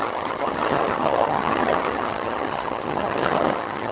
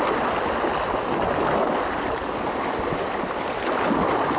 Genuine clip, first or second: second